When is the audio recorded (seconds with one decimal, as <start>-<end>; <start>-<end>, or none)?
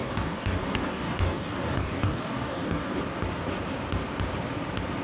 3.0-5.0